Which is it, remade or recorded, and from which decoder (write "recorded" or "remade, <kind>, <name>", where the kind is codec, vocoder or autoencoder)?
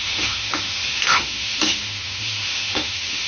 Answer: remade, autoencoder, DAC-VAE